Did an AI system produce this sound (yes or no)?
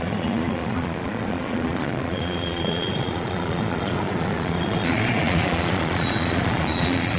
yes